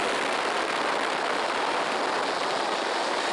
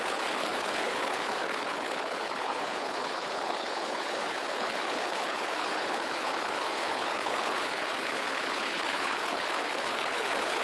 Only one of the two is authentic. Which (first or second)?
first